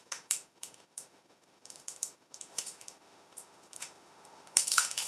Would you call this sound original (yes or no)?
no